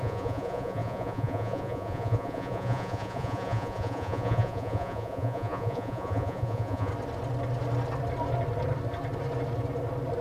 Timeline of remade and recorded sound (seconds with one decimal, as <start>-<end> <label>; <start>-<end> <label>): 0.0-6.9 remade; 6.9-10.2 recorded